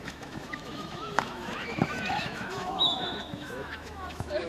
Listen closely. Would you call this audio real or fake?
fake